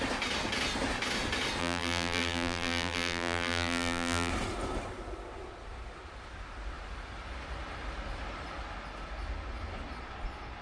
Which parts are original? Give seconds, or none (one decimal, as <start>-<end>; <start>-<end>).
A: 0.0-1.6; 4.3-10.6